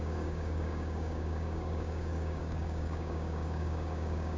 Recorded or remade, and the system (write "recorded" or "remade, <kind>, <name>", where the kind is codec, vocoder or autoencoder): remade, codec, DAC